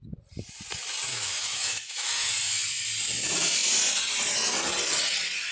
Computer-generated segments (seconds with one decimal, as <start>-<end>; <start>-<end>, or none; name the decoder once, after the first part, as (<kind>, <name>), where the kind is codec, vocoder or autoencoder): 1.1-2.3 (autoencoder, DAC-VAE)